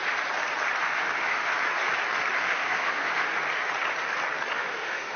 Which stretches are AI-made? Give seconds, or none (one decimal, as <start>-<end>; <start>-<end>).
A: 0.8-1.5; 2.4-3.3; 4.6-5.2